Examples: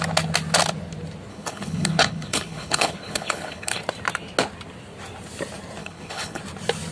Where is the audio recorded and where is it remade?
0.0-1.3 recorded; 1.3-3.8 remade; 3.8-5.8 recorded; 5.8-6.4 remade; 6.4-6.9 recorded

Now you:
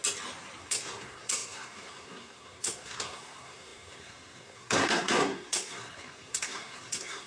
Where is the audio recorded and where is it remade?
0.0-0.6 recorded; 0.6-7.3 remade

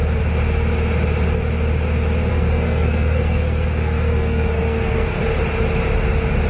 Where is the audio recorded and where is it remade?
0.0-2.3 recorded; 2.3-5.2 remade; 5.2-6.5 recorded

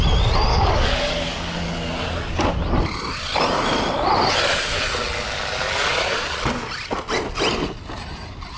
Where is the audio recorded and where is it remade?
0.0-0.5 recorded; 0.5-1.6 remade; 1.6-8.6 recorded

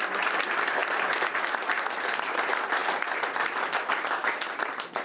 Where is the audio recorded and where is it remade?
0.0-5.0 recorded

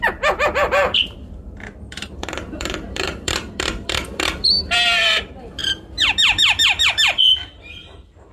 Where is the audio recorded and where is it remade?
0.0-8.3 remade